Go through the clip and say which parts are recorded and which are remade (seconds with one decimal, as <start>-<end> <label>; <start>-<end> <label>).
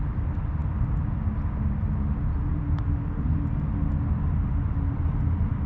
0.0-5.7 recorded